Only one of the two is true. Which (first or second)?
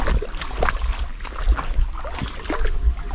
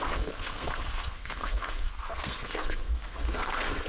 first